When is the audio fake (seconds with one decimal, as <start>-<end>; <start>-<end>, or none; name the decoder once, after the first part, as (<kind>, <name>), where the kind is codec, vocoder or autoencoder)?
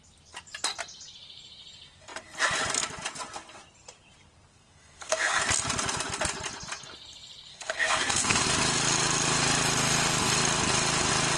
4.5-5.4 (codec, SNAC); 7.5-8.4